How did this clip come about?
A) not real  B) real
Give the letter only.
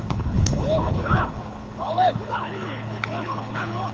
A